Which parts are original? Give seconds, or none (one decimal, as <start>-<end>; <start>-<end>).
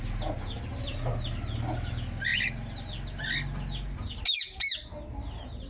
0.0-5.7